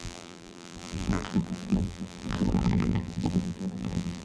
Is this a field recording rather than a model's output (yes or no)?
no